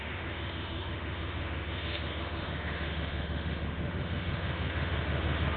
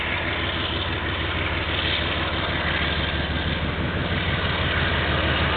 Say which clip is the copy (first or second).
first